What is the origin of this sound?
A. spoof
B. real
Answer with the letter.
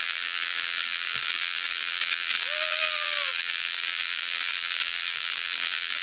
A